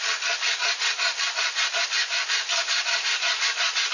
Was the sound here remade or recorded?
recorded